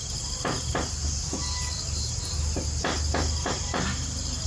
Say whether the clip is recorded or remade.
recorded